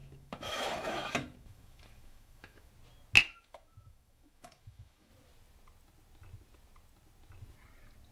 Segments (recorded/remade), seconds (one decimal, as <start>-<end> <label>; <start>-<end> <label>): 0.0-2.7 remade; 2.7-3.2 recorded; 3.2-5.1 remade; 5.1-8.1 recorded